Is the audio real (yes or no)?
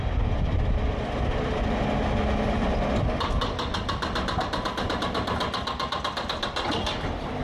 yes